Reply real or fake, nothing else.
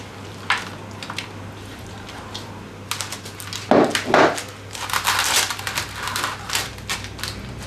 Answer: real